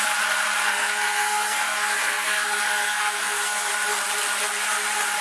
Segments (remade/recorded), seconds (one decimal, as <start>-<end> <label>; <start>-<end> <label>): 0.0-0.6 recorded; 0.6-3.7 remade; 3.7-5.2 recorded